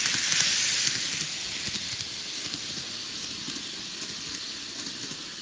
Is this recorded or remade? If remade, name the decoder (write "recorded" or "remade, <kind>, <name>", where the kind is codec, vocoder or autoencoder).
recorded